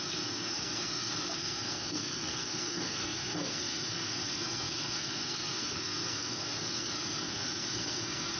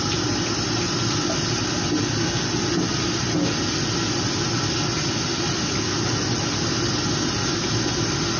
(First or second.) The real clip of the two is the second